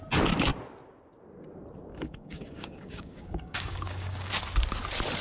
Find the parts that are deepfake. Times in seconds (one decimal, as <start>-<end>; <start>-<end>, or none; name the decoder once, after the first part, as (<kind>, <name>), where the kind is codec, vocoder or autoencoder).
1.9-4.3 (codec, DAC)

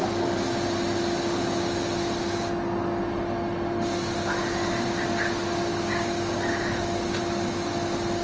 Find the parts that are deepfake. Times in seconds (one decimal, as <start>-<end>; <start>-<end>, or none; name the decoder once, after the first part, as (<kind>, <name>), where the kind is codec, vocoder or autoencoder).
5.7-6.5 (codec, DAC)

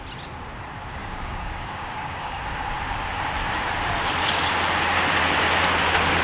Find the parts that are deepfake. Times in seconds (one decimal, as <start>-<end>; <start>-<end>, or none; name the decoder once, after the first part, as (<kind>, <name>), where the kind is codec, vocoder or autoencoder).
1.0-2.4 (codec, DAC)

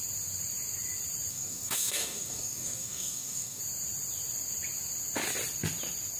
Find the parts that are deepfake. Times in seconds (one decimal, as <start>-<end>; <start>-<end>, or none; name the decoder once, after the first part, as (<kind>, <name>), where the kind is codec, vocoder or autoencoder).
1.3-3.6 (codec, DAC)

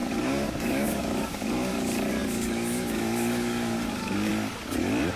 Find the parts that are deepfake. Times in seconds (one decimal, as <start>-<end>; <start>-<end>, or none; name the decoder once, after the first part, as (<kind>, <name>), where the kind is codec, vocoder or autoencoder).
0.0-4.3 (codec, DAC)